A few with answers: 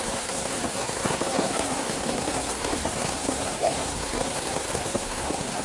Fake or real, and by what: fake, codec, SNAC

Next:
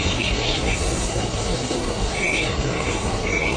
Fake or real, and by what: fake, codec, SNAC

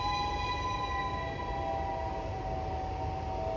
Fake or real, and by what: real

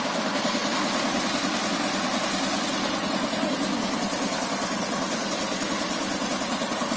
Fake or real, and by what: real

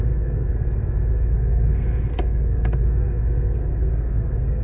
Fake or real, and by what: fake, codec, SNAC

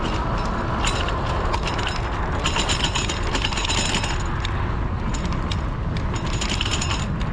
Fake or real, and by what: real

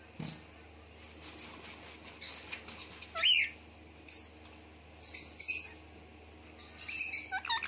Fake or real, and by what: real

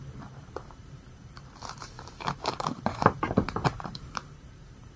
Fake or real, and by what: fake, vocoder, BigVGAN v2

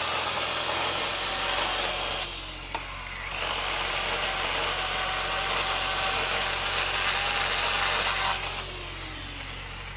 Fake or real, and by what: real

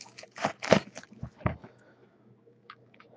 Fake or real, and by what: fake, autoencoder, DAC-VAE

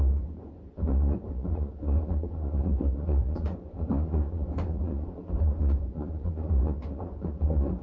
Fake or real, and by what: fake, vocoder, Vocos